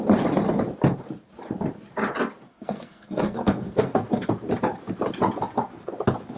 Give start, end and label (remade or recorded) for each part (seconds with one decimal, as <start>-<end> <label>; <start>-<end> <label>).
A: 0.0-2.5 recorded; 2.5-4.3 remade; 4.3-6.4 recorded